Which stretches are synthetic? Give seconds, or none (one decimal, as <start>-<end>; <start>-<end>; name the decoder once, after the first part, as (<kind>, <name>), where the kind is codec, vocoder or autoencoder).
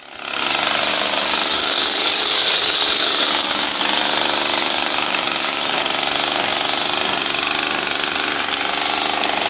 0.9-3.8 (codec, DAC); 4.6-5.8